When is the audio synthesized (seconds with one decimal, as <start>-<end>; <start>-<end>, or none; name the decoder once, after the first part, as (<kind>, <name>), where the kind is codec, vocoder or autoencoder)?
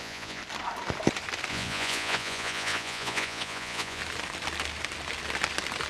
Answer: 0.0-0.4 (vocoder, Vocos); 1.5-4.0